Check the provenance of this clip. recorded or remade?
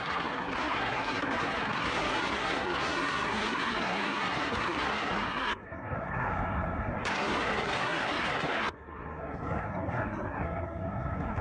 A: remade